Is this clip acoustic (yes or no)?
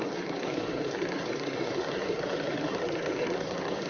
no